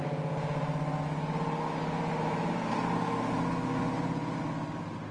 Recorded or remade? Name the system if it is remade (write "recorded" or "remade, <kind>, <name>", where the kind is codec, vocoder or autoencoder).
recorded